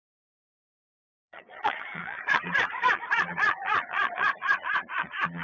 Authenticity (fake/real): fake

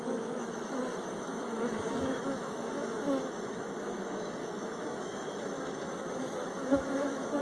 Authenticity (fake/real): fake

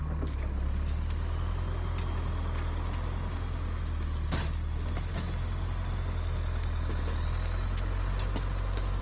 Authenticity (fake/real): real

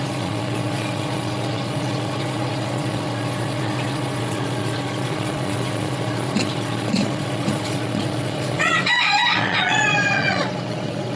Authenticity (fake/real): fake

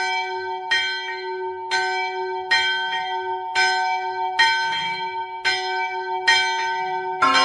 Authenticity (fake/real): real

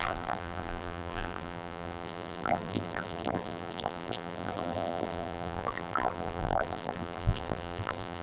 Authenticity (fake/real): fake